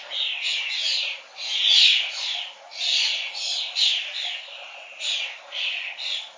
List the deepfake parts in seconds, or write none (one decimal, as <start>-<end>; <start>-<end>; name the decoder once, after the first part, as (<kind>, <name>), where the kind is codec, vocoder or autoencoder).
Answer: none